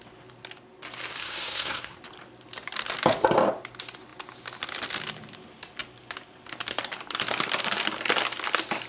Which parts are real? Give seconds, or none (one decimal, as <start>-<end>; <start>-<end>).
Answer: 0.0-1.2; 2.0-8.9